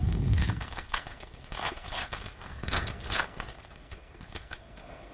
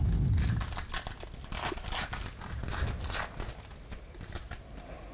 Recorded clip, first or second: second